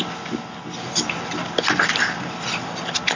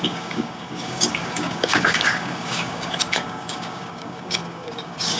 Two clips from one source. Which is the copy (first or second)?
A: second